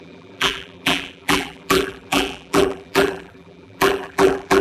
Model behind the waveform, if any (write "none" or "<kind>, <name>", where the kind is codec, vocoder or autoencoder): vocoder, BigVGAN v2